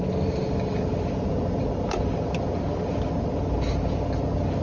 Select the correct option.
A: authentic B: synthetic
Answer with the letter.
A